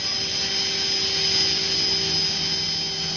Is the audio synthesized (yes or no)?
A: no